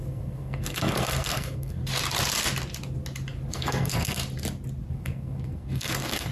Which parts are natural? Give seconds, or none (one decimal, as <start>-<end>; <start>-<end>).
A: 1.8-3.5; 4.2-4.9